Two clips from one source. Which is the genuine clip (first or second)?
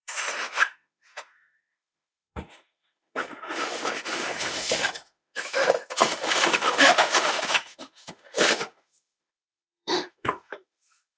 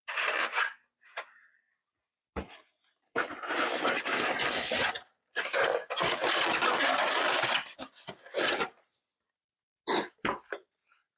second